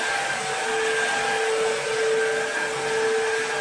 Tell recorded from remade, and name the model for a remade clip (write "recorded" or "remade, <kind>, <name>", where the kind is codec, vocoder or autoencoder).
recorded